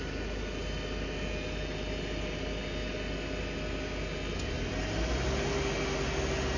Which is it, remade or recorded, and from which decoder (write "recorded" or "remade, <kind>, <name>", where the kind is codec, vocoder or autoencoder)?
recorded